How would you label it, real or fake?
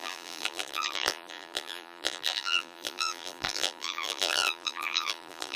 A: fake